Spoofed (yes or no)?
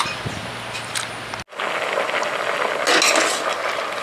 no